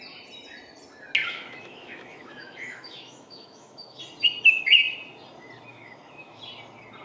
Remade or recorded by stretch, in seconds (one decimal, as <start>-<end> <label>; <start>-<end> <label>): 0.0-1.2 recorded; 1.2-4.0 remade; 4.0-5.7 recorded; 5.7-6.4 remade; 6.4-7.0 recorded